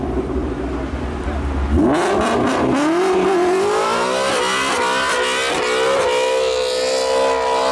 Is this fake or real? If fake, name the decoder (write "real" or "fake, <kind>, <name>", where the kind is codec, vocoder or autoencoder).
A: real